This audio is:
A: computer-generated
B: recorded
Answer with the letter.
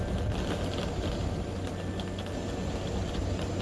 B